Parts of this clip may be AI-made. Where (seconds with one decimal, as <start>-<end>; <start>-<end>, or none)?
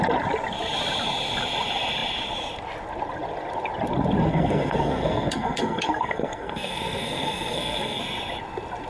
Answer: 4.3-8.0